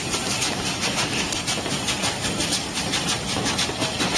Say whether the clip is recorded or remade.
recorded